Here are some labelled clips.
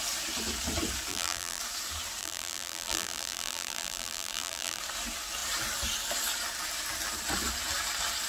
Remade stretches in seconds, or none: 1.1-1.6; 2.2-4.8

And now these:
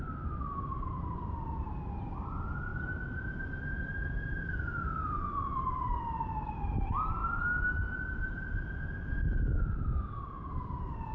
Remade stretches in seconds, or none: 0.0-2.7; 5.7-7.2; 10.0-11.1

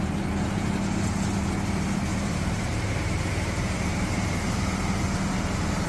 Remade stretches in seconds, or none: 2.1-5.9

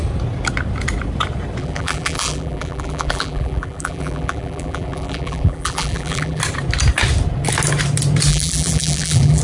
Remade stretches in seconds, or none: 1.6-6.4; 8.3-9.4

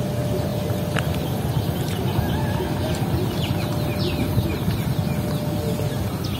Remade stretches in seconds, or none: 4.3-4.9

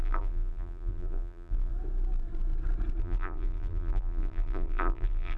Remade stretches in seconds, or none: 0.0-1.7; 3.0-5.4